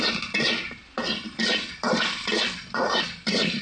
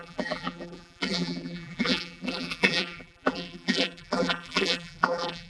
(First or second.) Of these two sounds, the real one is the first